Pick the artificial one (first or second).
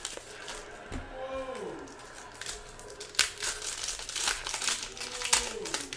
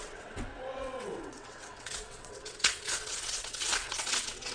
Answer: second